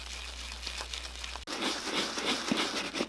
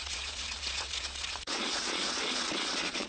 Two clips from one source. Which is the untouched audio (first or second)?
first